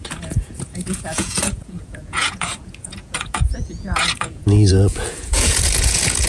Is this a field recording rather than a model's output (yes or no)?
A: no